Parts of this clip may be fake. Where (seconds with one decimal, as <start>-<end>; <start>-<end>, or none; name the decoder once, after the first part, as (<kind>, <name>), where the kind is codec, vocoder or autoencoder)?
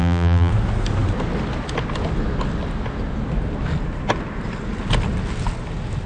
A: 0.0-0.5 (vocoder, BigVGAN v2)